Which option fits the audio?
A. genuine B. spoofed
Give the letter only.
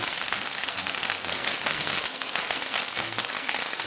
B